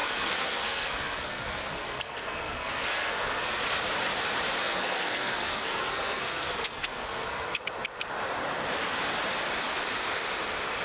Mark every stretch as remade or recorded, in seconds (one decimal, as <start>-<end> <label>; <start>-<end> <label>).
0.0-3.6 remade; 3.6-4.6 recorded; 4.6-7.6 remade; 7.6-10.8 recorded